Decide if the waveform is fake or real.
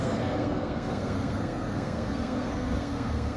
fake